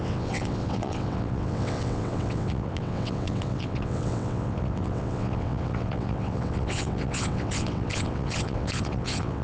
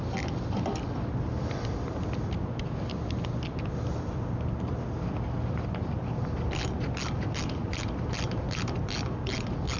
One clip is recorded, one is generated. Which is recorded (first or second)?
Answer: second